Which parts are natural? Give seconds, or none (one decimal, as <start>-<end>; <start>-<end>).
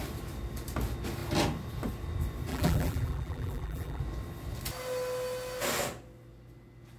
0.0-2.5; 4.0-7.0